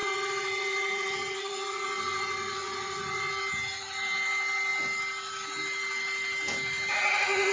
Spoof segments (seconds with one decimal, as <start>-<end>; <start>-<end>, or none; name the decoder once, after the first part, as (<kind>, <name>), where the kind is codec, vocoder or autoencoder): 0.0-3.3 (vocoder, Vocos)